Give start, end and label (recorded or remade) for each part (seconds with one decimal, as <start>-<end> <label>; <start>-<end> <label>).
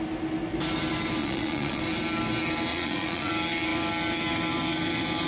0.0-1.2 recorded; 1.2-1.8 remade; 1.8-2.7 recorded; 2.7-3.3 remade; 3.3-5.3 recorded